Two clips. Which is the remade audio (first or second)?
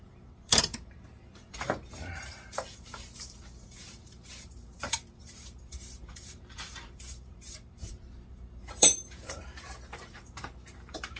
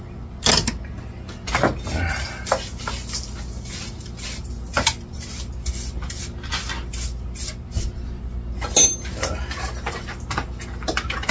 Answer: first